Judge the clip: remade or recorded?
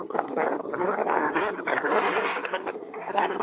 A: remade